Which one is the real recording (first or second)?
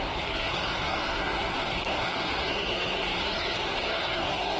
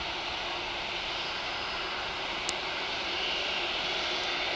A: second